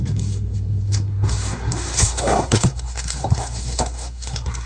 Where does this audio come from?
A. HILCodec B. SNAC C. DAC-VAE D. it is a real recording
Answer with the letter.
B